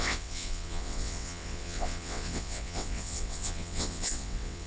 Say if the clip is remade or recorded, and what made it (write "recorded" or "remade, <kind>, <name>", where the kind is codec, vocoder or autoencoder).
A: remade, vocoder, WaveNeXt